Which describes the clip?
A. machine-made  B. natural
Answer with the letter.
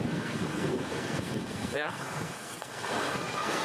A